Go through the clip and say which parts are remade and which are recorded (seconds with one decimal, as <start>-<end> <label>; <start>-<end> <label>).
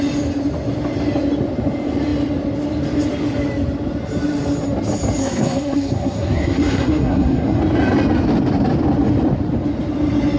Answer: 0.0-5.2 recorded; 5.2-7.6 remade; 7.6-10.4 recorded